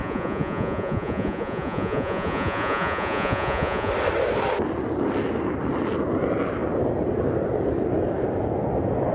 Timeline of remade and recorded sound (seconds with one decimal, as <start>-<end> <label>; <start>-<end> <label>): 0.0-3.9 remade; 3.9-9.1 recorded